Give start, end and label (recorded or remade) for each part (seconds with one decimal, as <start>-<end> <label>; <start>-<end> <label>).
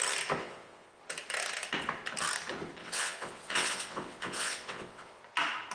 0.0-0.4 recorded; 0.4-1.0 remade; 1.0-2.8 recorded; 2.8-5.2 remade; 5.2-5.7 recorded